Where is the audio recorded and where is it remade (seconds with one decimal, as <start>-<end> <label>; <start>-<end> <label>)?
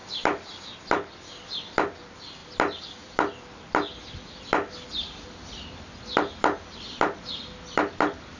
0.0-8.4 recorded